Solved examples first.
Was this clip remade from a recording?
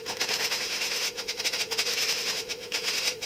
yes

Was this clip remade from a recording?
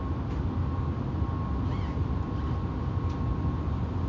no